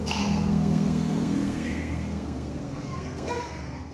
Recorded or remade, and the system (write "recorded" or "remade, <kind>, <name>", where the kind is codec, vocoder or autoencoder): remade, codec, SNAC